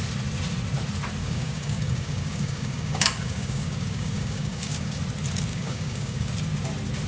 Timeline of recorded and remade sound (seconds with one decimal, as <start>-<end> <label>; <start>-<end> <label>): 0.0-1.2 recorded; 1.2-5.0 remade; 5.0-5.5 recorded; 5.5-6.3 remade; 6.3-7.1 recorded